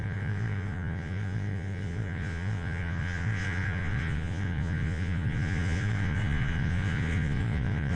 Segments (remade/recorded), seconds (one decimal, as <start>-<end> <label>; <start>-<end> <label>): 0.0-8.0 remade